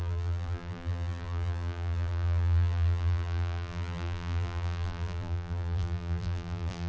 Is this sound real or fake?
fake